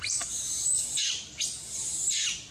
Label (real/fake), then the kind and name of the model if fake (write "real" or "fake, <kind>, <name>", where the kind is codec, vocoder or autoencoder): real